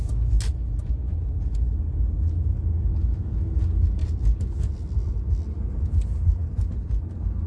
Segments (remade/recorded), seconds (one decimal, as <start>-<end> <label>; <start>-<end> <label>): 0.0-7.5 recorded